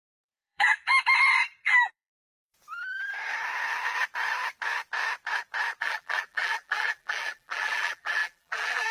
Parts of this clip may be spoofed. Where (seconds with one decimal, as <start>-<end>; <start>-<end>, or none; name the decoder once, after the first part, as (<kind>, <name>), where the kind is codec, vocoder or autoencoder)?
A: 0.0-0.9 (vocoder, BigVGAN v2); 1.6-2.1; 5.8-8.9